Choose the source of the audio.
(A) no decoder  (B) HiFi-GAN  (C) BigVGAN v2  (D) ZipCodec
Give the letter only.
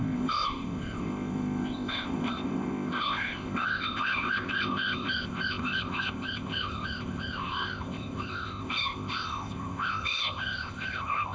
D